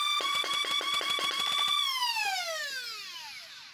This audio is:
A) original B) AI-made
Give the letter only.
A